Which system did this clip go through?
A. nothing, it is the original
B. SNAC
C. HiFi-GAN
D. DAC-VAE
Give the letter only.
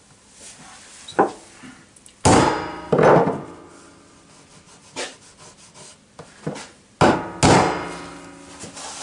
A